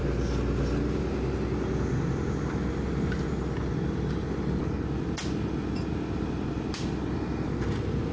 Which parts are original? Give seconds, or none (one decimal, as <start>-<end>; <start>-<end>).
0.0-8.1

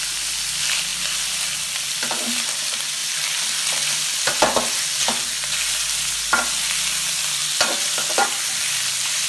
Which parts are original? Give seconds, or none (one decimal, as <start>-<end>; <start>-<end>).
0.0-3.0; 5.0-7.4; 8.5-9.3

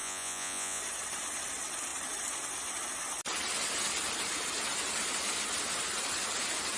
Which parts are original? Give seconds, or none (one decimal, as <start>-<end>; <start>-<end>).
0.8-6.8

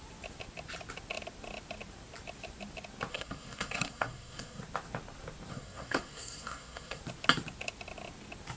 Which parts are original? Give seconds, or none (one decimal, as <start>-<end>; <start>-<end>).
0.0-3.1; 4.6-5.5; 7.0-8.6

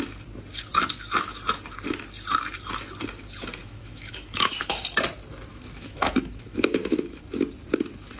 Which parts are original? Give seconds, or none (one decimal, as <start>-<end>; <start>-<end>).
0.0-3.6; 4.7-5.5; 7.2-8.2

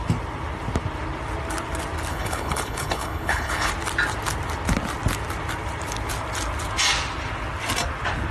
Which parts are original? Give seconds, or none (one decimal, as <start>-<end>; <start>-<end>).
0.0-2.1; 3.7-8.3

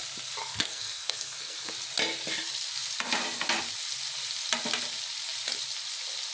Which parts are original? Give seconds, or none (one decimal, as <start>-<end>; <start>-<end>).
0.0-0.4; 1.7-6.3